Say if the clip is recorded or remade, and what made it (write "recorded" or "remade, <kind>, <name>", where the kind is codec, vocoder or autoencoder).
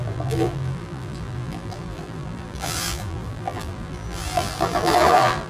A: remade, vocoder, BigVGAN v2